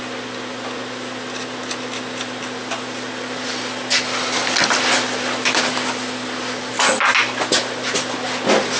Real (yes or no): yes